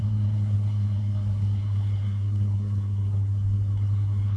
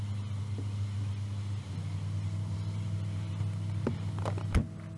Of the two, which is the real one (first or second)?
second